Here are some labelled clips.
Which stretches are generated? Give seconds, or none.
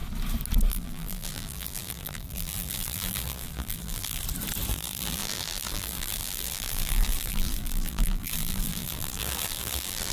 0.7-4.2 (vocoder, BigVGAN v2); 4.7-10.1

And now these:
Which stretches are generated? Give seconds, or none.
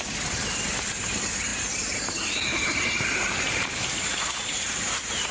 1.5-2.1 (vocoder, BigVGAN v2); 2.5-5.3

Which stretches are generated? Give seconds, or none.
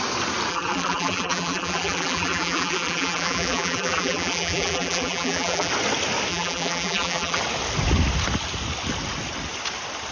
0.5-5.7 (vocoder, BigVGAN v2); 6.3-7.4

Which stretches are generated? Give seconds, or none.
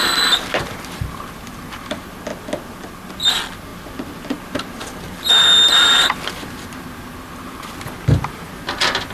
0.0-2.3 (vocoder, BigVGAN v2); 3.1-9.1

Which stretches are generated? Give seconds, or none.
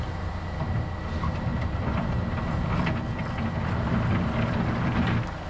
none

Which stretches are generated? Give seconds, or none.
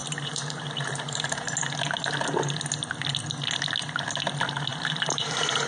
0.0-1.5 (vocoder, BigVGAN v2); 4.7-5.7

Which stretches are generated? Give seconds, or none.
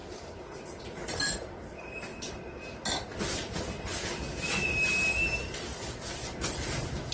0.8-2.1 (vocoder, BigVGAN v2); 3.2-7.1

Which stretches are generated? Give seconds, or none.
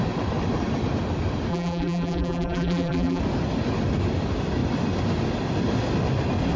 1.5-3.2 (vocoder, BigVGAN v2)